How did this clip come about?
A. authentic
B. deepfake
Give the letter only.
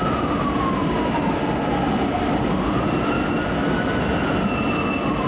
A